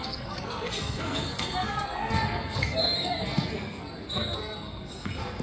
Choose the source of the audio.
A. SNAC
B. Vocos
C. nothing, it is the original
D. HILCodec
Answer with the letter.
A